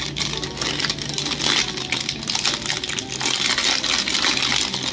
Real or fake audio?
real